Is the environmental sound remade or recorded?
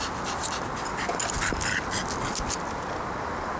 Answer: recorded